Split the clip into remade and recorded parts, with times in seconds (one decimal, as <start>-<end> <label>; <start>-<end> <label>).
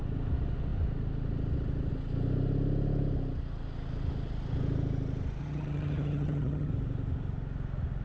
0.0-5.4 recorded; 5.4-6.7 remade; 6.7-8.0 recorded